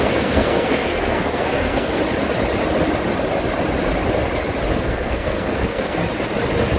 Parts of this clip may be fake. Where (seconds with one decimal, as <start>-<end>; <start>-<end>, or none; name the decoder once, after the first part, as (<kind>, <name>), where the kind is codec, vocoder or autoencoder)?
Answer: 0.0-2.0 (codec, SNAC); 4.7-6.0